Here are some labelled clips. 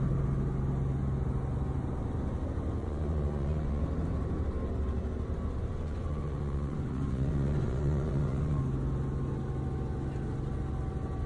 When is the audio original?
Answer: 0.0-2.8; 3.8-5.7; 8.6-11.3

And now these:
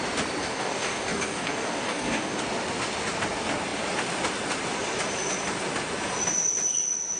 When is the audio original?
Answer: 0.0-0.4; 2.4-7.2

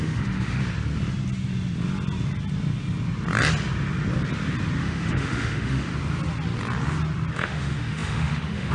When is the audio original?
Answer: 0.6-4.8; 5.9-7.3

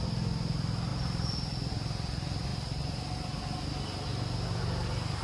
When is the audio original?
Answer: 0.0-5.2

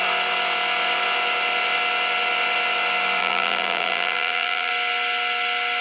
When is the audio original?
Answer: 0.0-3.2; 4.7-5.8